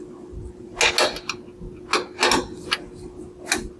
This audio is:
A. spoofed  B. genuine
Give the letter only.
B